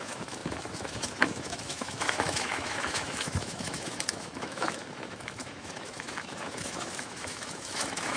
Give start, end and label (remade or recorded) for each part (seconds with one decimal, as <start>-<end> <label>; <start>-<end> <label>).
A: 0.0-8.2 remade